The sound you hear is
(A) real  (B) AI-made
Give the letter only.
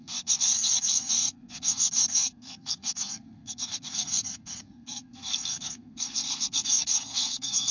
B